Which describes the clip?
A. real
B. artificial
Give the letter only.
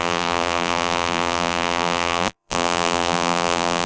B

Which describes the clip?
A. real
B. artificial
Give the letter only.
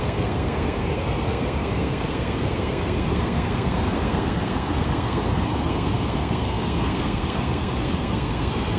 B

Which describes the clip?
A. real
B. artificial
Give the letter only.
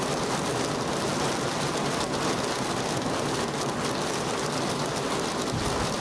A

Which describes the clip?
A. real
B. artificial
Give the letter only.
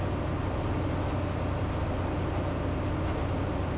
A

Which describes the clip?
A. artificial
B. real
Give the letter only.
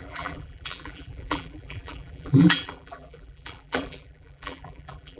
A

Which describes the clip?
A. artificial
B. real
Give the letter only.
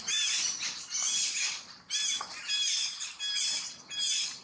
B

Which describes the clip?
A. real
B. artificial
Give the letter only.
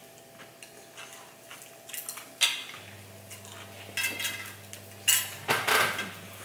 A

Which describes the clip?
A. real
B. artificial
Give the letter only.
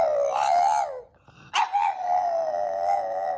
A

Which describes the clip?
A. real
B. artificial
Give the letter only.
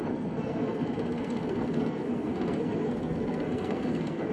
B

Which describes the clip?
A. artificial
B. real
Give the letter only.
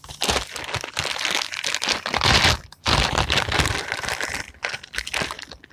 B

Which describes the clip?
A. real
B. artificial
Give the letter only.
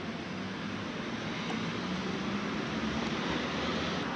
A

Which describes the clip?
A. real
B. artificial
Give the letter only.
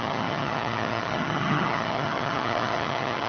B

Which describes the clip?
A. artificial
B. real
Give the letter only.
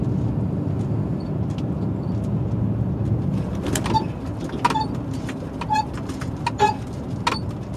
B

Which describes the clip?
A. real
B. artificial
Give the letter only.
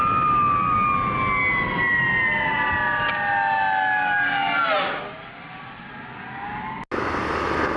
A